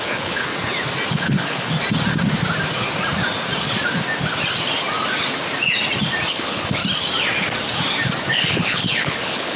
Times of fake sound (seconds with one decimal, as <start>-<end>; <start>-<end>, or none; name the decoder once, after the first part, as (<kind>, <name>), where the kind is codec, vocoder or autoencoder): 0.0-0.5 (codec, HILCodec); 1.1-1.7; 6.3-6.8; 8.3-9.6